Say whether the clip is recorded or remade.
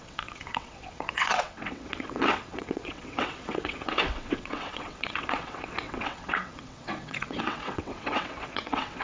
remade